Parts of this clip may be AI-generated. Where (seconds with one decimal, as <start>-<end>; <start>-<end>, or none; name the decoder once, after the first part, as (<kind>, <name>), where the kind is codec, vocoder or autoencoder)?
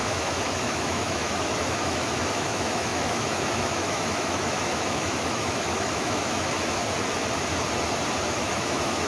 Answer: 0.0-6.8 (autoencoder, DAC-VAE); 8.2-9.1